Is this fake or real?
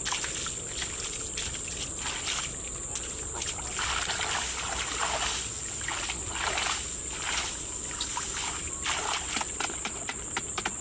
real